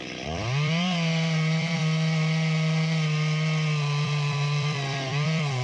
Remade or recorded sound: remade